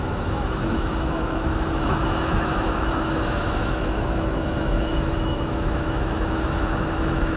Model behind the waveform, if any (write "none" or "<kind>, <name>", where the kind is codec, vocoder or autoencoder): autoencoder, DAC-VAE